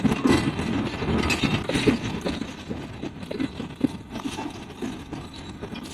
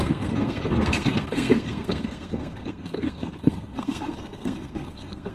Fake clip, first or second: second